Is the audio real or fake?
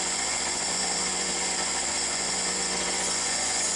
fake